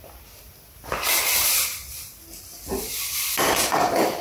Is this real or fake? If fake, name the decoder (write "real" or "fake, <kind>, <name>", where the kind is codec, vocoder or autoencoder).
real